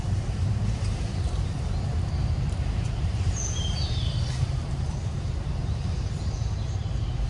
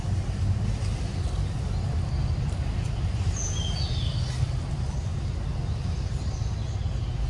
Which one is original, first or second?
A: second